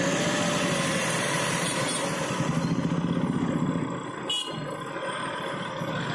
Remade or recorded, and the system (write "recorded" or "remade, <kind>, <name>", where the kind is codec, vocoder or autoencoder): recorded